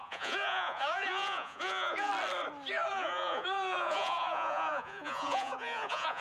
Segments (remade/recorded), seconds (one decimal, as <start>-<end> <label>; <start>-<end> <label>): 0.0-2.1 remade; 2.1-2.9 recorded; 2.9-6.2 remade